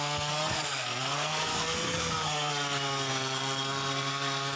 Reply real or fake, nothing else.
fake